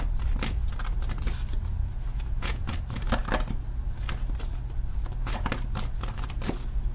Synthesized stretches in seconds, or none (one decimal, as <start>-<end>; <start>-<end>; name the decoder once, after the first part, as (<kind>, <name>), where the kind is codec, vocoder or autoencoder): 2.1-2.7 (vocoder, Vocos)